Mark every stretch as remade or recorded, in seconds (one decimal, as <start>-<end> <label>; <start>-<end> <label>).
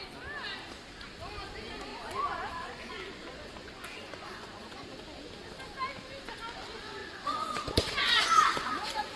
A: 0.0-1.9 recorded; 1.9-2.9 remade; 2.9-3.3 recorded; 3.3-4.9 remade; 4.9-7.0 recorded; 7.0-9.2 remade